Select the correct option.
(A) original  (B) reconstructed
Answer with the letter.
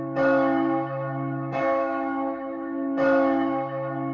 B